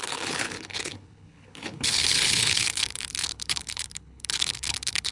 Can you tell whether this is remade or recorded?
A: remade